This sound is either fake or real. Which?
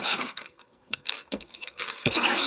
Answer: fake